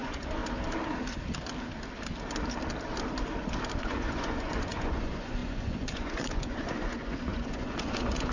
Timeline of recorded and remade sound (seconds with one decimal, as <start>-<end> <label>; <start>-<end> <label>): 0.0-0.4 remade; 0.4-3.8 recorded; 3.8-8.3 remade